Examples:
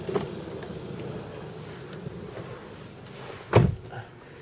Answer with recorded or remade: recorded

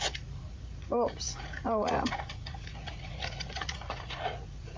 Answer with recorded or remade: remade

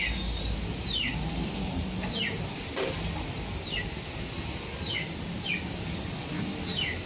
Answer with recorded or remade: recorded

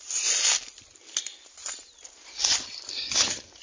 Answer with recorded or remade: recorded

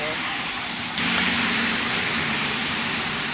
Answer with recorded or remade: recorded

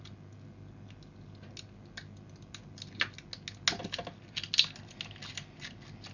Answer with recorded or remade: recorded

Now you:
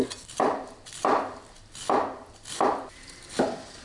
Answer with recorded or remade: recorded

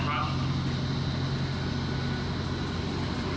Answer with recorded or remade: recorded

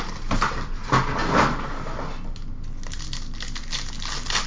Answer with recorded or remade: recorded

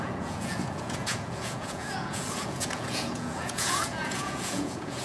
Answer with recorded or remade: remade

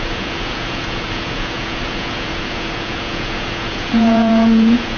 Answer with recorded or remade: remade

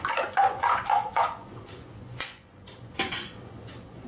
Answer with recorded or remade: remade